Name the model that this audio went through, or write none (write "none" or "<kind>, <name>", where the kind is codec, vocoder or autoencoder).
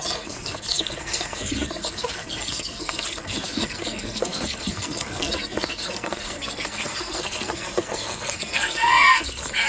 codec, SNAC